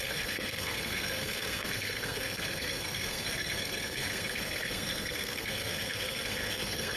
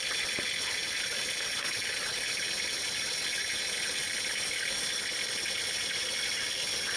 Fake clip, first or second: first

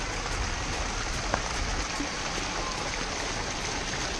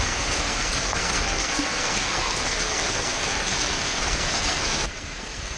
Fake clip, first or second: second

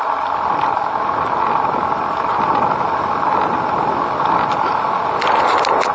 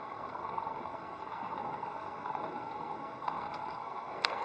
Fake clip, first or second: second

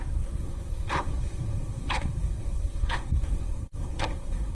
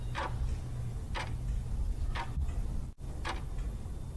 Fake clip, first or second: first